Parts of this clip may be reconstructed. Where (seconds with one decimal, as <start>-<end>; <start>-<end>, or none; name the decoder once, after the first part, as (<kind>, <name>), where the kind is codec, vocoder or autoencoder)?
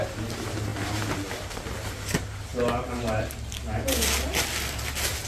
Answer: none